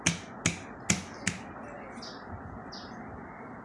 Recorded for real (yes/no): yes